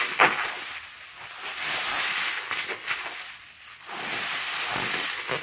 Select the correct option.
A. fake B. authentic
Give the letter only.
B